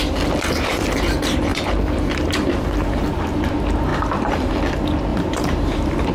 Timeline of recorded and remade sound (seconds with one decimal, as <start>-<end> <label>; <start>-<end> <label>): 0.0-1.5 recorded; 1.5-2.3 remade; 2.3-3.9 recorded; 3.9-4.5 remade; 4.5-5.1 recorded; 5.1-6.1 remade